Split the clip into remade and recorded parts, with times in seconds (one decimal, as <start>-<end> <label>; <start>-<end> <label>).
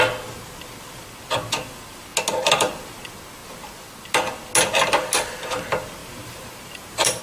0.0-6.0 recorded; 6.0-7.2 remade